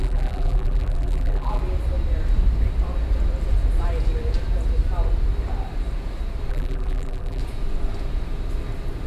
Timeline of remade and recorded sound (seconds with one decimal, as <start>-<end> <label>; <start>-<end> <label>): 0.0-1.6 remade; 1.6-6.5 recorded; 6.5-7.4 remade; 7.4-9.1 recorded